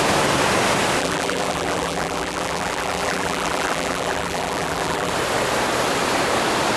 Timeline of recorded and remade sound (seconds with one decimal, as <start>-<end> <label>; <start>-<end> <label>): 0.0-1.0 recorded; 1.0-5.1 remade; 5.1-6.8 recorded